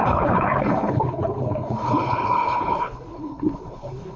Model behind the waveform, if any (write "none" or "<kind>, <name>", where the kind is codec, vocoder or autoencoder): codec, HILCodec